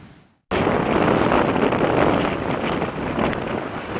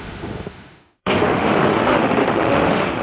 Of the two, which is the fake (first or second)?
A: second